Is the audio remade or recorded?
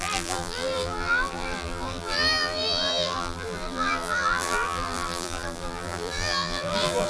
remade